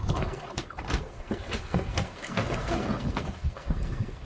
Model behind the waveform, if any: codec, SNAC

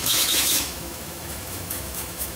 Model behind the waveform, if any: autoencoder, DAC-VAE